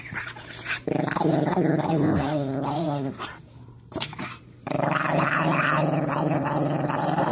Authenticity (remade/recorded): remade